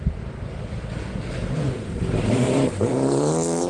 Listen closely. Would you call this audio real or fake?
real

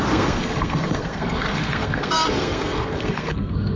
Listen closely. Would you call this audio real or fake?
fake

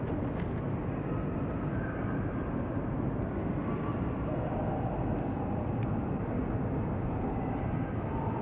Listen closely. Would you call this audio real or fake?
real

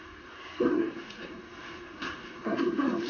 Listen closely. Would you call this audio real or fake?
fake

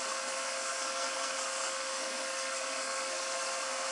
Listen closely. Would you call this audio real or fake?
fake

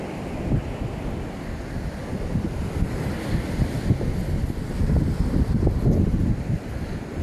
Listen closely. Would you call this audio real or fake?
real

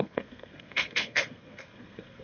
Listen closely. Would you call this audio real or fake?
fake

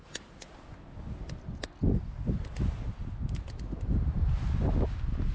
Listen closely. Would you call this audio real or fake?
real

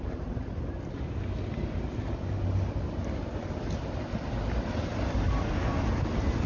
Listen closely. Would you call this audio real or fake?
real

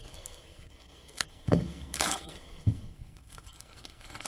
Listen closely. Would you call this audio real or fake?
fake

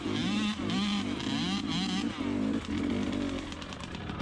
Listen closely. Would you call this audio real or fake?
real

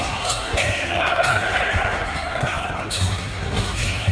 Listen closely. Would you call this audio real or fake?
fake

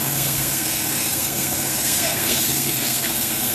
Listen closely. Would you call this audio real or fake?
fake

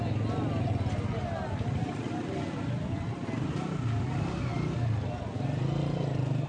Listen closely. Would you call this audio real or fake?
real